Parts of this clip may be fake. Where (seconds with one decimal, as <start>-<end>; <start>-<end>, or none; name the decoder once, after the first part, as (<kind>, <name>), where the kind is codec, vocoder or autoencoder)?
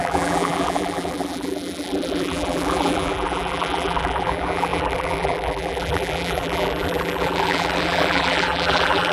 0.0-9.1 (vocoder, BigVGAN v2)